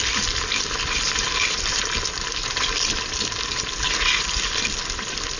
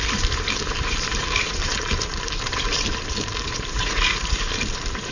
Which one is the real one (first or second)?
first